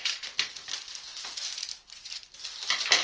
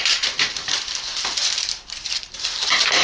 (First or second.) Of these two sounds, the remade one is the second